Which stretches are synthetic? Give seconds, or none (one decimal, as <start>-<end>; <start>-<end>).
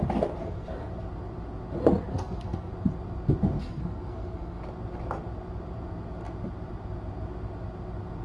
0.4-0.9; 2.1-2.7; 3.6-4.6